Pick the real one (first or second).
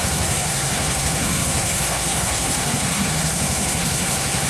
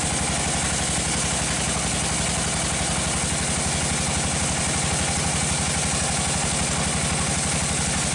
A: second